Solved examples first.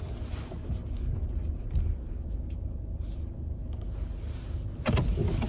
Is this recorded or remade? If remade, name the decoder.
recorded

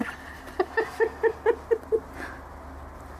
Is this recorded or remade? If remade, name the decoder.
recorded